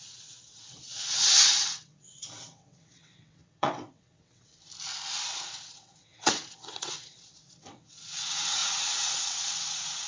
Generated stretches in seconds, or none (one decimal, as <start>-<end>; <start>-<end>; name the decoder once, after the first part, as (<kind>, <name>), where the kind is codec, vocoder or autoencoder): 0.0-4.5 (vocoder, WaveNeXt); 5.5-10.1